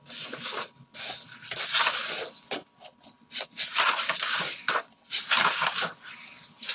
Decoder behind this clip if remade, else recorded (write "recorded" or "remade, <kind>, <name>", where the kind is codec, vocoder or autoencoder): recorded